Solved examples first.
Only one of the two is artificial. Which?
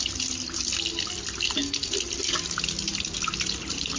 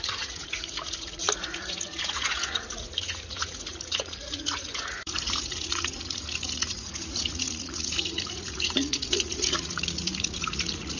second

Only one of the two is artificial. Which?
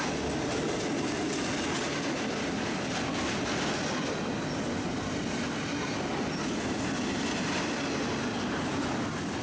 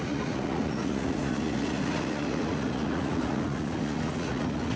second